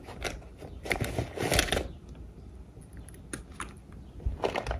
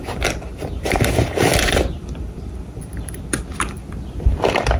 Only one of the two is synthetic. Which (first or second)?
second